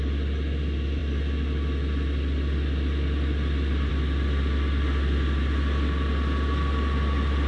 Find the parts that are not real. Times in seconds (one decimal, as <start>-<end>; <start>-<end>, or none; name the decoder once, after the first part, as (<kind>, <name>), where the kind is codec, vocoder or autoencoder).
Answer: none